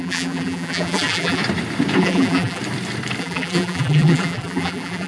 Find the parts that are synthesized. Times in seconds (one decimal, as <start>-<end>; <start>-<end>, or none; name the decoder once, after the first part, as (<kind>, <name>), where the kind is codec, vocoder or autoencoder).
0.0-1.4 (vocoder, BigVGAN v2); 2.0-2.6; 3.2-5.1